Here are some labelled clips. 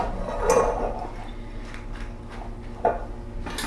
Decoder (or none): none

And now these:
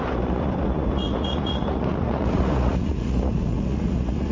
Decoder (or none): vocoder, Vocos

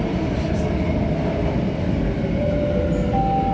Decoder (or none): none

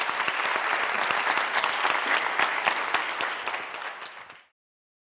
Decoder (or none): none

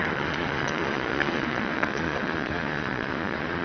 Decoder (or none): vocoder, Vocos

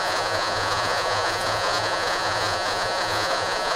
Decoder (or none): vocoder, Vocos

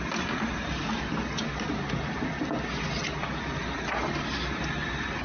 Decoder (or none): none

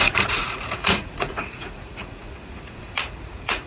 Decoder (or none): vocoder, Vocos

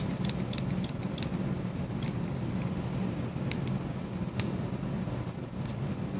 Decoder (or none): none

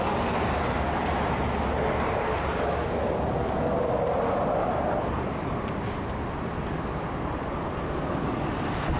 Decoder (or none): none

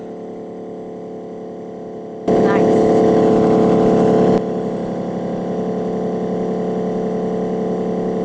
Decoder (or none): none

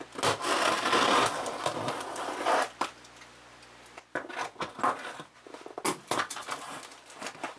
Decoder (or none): none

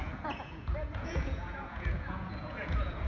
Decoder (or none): vocoder, Vocos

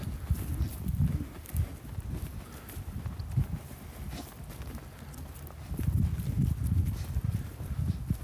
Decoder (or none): none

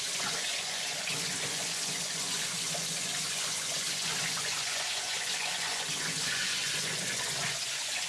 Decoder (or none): vocoder, Vocos